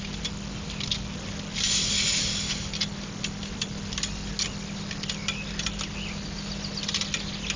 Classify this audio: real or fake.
real